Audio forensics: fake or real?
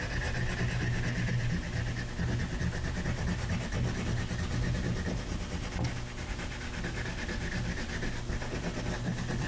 real